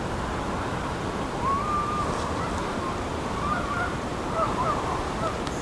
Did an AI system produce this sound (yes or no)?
no